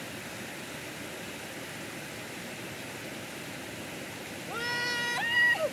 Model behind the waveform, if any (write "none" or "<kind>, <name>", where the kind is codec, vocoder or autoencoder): none